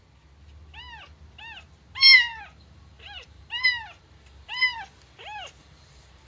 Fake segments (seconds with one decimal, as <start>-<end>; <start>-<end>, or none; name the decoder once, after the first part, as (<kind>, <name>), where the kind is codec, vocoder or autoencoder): 2.3-4.6 (vocoder, BigVGAN v2); 5.6-6.3